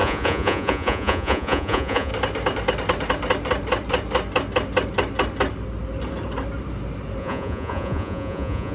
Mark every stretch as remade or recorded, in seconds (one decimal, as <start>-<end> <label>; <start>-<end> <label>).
0.0-2.1 remade; 2.1-7.2 recorded; 7.2-8.7 remade